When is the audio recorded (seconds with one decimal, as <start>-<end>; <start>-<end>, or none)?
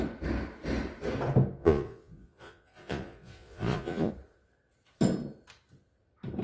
0.0-1.6; 4.1-6.4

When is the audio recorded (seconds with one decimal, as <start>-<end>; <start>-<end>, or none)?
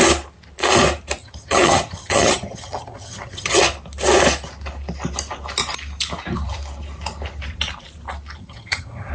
0.0-1.2; 3.6-8.4